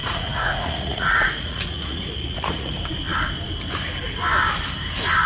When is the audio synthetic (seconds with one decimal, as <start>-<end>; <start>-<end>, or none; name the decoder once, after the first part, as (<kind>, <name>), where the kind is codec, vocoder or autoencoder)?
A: 0.0-2.7 (vocoder, Vocos)